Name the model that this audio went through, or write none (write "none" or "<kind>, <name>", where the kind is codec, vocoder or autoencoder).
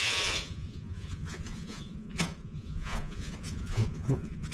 vocoder, Vocos